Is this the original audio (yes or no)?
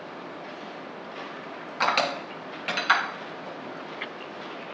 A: yes